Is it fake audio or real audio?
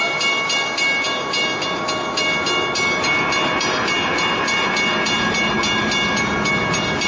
real